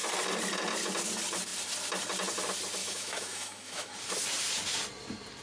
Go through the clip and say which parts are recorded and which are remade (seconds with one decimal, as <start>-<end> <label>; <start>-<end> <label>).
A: 0.0-2.8 recorded; 2.8-3.9 remade; 3.9-5.4 recorded